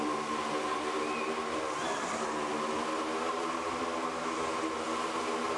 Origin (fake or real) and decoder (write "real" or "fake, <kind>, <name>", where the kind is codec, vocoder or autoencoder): real